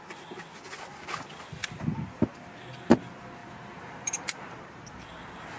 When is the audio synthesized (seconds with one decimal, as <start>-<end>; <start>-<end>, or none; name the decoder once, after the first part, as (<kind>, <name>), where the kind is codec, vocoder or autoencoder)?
3.4-5.0 (vocoder, BigVGAN v2)